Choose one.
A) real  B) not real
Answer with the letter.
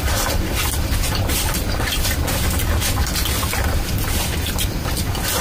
A